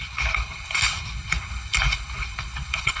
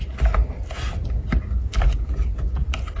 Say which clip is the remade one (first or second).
first